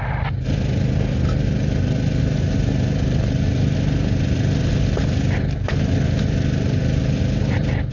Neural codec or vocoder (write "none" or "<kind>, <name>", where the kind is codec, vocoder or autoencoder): none